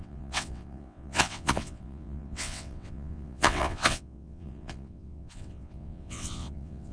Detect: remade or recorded remade